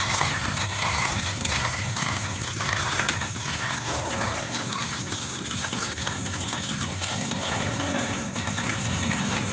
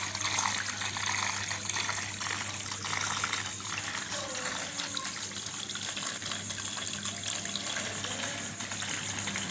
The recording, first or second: second